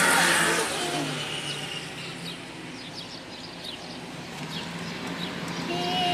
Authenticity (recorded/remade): recorded